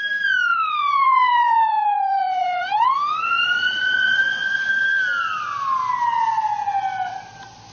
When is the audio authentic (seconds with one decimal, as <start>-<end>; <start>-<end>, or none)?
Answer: 0.0-0.5; 4.6-7.7